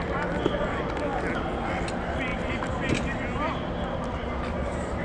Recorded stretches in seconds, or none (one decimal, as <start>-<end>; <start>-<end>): 0.0-5.0